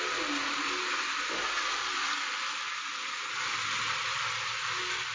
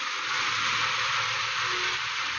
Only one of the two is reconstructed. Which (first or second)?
first